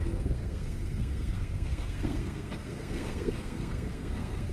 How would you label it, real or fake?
fake